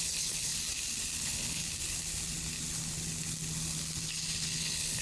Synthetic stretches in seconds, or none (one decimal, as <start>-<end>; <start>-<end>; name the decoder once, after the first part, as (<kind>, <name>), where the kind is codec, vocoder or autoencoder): 0.0-0.5 (codec, HILCodec); 1.2-1.6; 4.6-5.0